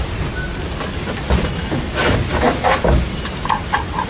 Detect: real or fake real